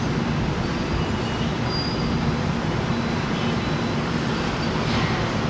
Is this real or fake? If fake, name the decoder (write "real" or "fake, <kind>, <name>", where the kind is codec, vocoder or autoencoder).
real